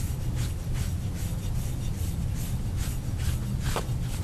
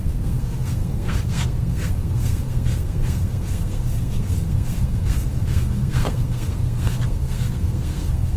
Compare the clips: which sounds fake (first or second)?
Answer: second